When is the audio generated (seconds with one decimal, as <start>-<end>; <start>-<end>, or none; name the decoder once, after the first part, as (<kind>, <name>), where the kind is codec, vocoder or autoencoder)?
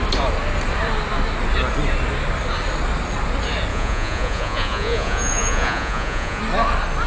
3.7-6.4 (vocoder, Vocos)